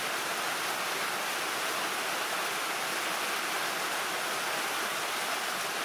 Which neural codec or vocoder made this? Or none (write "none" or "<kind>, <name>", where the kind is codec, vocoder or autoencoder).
none